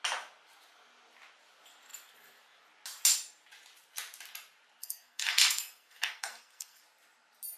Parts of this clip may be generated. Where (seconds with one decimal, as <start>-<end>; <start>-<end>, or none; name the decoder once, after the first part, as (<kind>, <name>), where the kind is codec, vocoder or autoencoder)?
4.8-6.8 (codec, SNAC)

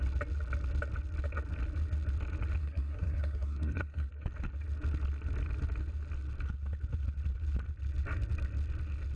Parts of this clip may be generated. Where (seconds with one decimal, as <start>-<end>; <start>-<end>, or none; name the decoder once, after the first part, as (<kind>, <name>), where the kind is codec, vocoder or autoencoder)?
2.6-4.1 (codec, SNAC)

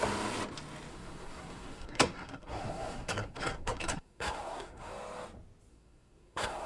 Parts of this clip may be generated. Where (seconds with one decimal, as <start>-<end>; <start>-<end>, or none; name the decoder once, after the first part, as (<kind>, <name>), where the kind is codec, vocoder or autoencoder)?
0.9-4.9 (codec, SNAC); 5.7-6.7

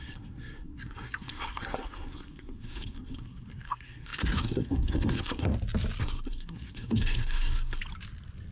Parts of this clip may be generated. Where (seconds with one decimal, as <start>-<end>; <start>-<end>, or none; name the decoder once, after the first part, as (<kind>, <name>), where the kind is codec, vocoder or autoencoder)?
0.0-5.5 (codec, SNAC); 6.0-7.8

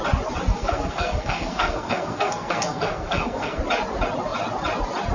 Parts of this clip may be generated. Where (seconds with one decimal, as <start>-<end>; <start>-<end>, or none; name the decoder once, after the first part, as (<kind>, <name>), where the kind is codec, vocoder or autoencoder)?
0.5-3.6 (codec, SNAC)

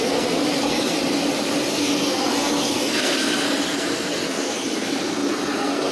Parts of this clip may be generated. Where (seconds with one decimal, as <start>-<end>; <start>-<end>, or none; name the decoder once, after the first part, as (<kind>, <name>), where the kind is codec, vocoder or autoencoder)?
0.0-1.0 (codec, SNAC); 1.7-5.9

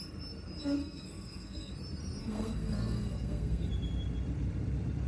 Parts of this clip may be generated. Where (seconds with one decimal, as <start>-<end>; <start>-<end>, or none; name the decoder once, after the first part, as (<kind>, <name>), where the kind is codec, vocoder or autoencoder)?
0.8-1.7 (codec, SNAC); 2.2-3.7

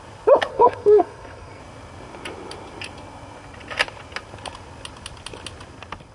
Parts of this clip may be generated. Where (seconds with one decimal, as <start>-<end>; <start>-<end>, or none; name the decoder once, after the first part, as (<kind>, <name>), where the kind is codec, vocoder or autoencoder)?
0.5-1.6 (codec, SNAC)